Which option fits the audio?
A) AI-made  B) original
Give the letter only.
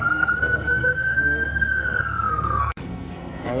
A